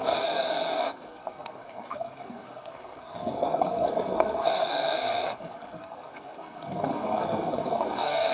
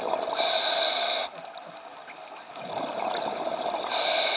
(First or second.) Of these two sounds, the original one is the second